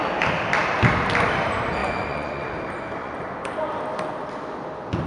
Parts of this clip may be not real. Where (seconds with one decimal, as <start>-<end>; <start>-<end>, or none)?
1.8-2.5; 3.0-3.6

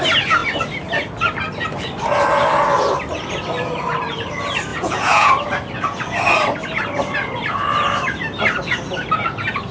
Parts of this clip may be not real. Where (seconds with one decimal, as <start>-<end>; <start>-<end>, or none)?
4.7-5.3

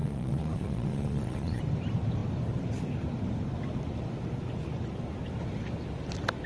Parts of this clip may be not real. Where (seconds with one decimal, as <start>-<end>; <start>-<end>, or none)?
0.0-1.6

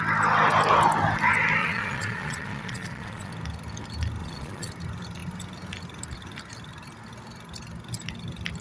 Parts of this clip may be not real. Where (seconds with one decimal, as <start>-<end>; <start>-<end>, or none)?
1.6-3.3; 4.2-4.7

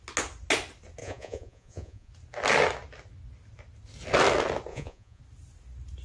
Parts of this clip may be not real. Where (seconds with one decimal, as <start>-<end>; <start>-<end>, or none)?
1.0-2.1; 4.7-5.2

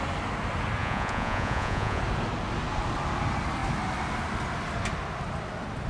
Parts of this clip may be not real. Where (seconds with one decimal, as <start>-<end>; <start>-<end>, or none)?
0.8-2.0